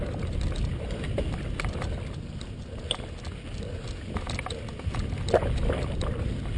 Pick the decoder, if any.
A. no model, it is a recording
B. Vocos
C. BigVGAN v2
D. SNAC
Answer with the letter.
A